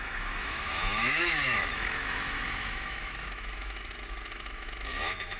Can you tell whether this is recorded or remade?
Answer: remade